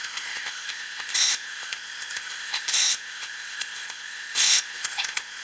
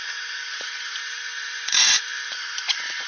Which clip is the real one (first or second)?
second